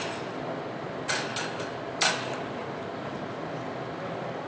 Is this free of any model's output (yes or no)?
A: yes